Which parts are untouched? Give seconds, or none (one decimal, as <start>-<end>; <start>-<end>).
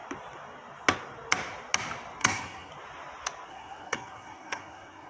0.0-2.2; 2.7-3.5